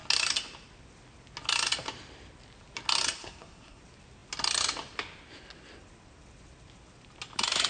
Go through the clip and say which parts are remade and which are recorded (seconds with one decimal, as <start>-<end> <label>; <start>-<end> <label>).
0.0-3.2 recorded; 3.2-3.8 remade; 3.8-7.7 recorded